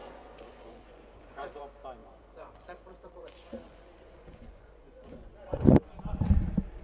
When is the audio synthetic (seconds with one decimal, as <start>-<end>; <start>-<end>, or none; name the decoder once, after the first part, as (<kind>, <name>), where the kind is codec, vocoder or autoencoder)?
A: 0.0-1.6 (vocoder, Vocos); 2.0-6.1